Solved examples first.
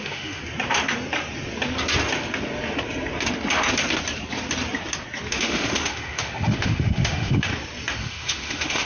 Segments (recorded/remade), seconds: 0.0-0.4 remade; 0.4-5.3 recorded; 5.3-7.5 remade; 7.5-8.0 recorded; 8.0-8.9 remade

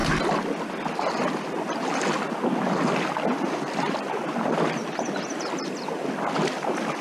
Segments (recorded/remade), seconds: 0.0-7.0 recorded

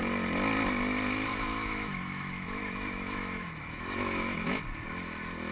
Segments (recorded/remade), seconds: 0.0-1.3 recorded; 1.3-4.6 remade; 4.6-5.5 recorded

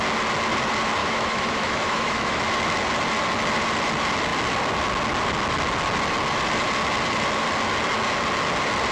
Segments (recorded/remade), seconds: 0.0-1.0 recorded; 1.0-2.4 remade; 2.4-8.9 recorded

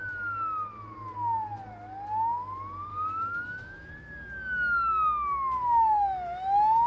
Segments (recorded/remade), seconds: 0.0-2.9 recorded; 2.9-3.9 remade; 3.9-6.9 recorded

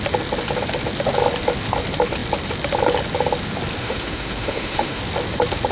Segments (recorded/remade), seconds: 0.0-3.8 recorded; 3.8-5.0 remade; 5.0-5.7 recorded

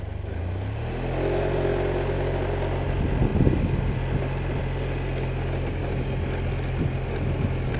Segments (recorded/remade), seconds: 0.0-7.8 recorded

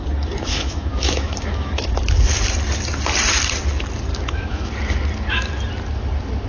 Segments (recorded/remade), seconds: 0.0-0.5 recorded; 0.5-1.9 remade; 1.9-4.1 recorded; 4.1-4.7 remade; 4.7-6.5 recorded